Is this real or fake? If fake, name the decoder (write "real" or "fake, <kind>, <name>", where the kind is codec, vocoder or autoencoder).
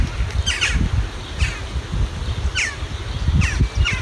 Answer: real